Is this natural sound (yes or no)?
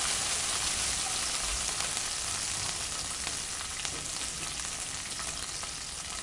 yes